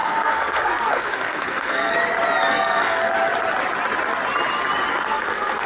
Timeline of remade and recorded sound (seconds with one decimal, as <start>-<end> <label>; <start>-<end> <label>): 0.0-1.9 remade; 1.9-2.5 recorded; 2.5-3.1 remade; 3.1-4.9 recorded; 4.9-5.7 remade